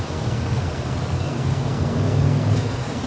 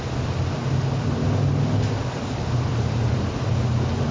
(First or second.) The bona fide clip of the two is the second